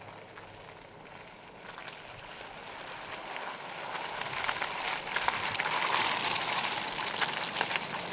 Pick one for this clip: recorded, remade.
recorded